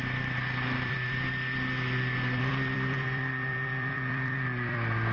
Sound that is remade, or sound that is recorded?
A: remade